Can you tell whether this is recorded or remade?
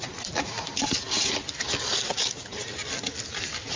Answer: recorded